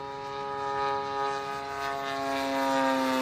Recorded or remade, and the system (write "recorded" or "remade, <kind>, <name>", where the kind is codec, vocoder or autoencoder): recorded